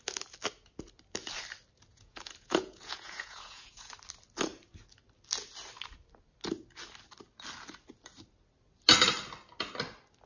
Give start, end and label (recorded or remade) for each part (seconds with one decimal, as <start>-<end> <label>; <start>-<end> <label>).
0.0-1.9 recorded; 1.9-3.9 remade; 3.9-10.3 recorded